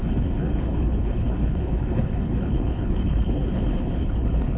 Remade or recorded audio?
remade